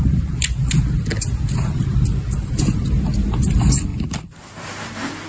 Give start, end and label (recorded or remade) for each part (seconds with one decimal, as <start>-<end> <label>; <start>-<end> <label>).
0.0-3.9 recorded; 3.9-4.4 remade; 4.4-5.3 recorded

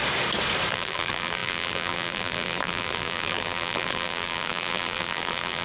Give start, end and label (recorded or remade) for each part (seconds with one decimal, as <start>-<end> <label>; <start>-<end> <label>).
0.0-0.7 recorded; 0.7-5.6 remade

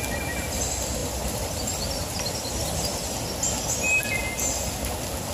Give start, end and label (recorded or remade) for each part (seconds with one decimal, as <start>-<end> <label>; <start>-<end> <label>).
0.0-5.3 recorded

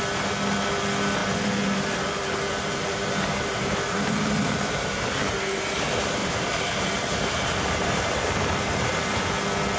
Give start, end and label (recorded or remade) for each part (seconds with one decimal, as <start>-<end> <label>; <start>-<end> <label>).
0.0-1.2 recorded; 1.2-5.1 remade; 5.1-6.2 recorded; 6.2-9.1 remade; 9.1-9.8 recorded

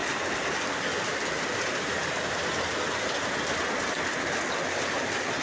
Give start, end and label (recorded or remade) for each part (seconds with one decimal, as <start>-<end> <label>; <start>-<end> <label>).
0.0-1.3 recorded; 1.3-2.4 remade; 2.4-5.4 recorded